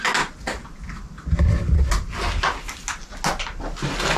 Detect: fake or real real